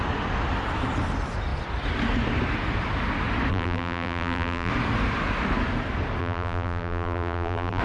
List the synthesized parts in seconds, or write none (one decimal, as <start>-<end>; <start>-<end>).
3.5-4.7; 6.2-7.8